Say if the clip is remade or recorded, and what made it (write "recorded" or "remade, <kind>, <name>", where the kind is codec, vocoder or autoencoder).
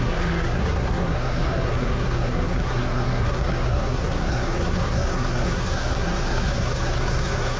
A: remade, codec, SNAC